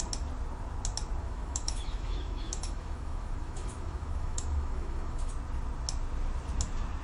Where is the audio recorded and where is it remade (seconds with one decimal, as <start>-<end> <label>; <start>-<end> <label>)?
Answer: 0.0-1.2 recorded; 1.2-5.3 remade; 5.3-7.0 recorded